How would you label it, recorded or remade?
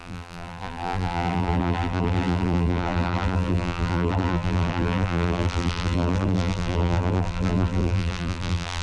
remade